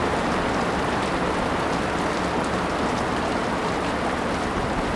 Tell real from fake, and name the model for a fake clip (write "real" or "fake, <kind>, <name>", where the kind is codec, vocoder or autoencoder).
real